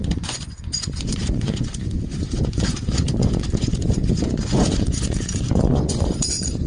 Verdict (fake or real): fake